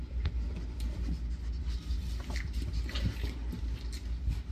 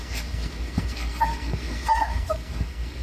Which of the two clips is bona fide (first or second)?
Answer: first